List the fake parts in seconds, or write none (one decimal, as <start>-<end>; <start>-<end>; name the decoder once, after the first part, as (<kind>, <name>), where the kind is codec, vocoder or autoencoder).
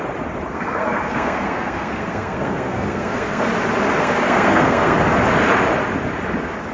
0.5-3.5 (codec, SNAC); 4.0-5.1